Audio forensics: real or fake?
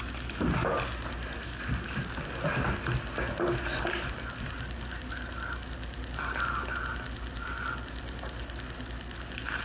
real